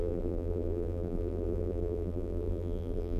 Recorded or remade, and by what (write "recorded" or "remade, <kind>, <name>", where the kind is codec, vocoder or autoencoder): remade, vocoder, BigVGAN v2